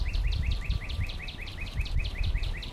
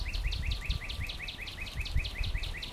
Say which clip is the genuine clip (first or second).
second